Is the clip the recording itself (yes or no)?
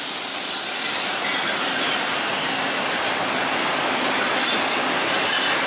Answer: yes